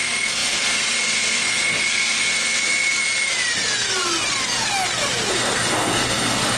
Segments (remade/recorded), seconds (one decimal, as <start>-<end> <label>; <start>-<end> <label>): 0.0-3.0 remade; 3.0-5.3 recorded; 5.3-6.6 remade